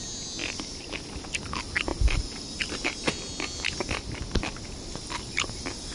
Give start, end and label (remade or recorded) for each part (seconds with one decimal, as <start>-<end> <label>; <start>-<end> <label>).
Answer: 0.0-5.9 recorded